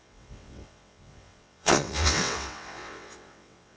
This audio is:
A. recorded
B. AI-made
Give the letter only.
B